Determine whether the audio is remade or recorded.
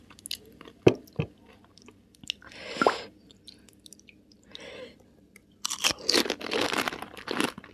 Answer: recorded